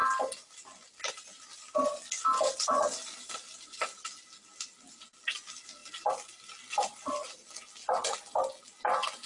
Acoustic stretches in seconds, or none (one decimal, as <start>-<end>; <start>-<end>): 0.0-9.3